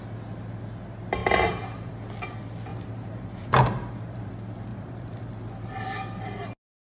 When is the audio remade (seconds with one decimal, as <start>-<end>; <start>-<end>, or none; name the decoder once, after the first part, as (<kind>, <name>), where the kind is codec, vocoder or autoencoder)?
1.2-1.9 (vocoder, BigVGAN v2); 2.7-4.3; 4.7-5.3